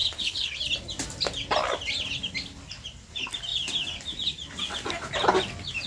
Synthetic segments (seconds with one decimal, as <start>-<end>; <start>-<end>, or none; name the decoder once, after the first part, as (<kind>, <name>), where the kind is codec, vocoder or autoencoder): 0.0-0.6 (codec, HILCodec)